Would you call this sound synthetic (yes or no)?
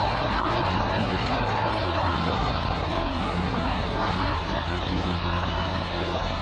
yes